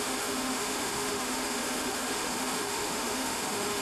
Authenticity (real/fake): fake